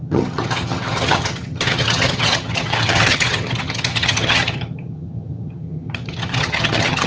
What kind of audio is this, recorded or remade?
remade